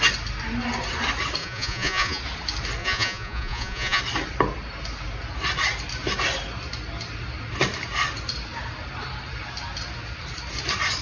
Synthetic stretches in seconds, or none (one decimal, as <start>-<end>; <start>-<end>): 1.4-2.2; 2.8-4.0

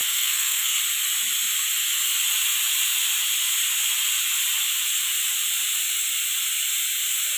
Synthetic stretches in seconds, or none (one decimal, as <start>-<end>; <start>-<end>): 0.0-0.8

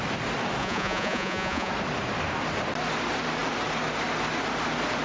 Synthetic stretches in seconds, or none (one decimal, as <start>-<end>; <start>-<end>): 0.6-1.7

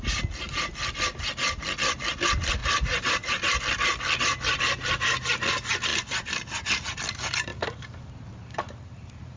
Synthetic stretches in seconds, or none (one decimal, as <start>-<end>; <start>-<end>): 2.6-3.6; 5.9-6.8; 7.5-9.4

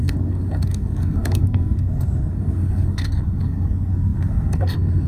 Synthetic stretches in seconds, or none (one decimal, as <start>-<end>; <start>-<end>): 0.0-5.1

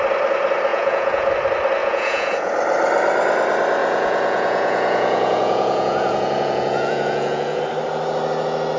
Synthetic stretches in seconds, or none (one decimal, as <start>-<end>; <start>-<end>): 0.7-1.3; 1.8-2.5; 3.8-7.6

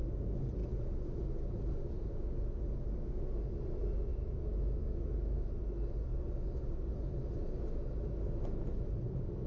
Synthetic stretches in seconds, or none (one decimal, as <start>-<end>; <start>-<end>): 4.1-5.5